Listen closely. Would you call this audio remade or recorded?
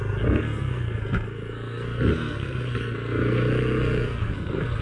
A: remade